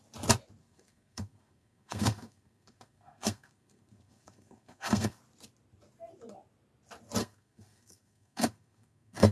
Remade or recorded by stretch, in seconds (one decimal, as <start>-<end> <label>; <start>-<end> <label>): 0.0-0.6 recorded; 0.6-5.2 remade; 5.2-7.2 recorded; 7.2-9.3 remade